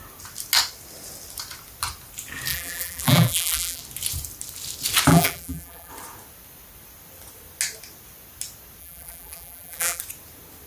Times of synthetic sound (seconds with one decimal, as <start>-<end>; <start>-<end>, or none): 2.5-3.8; 5.1-5.9; 8.8-10.0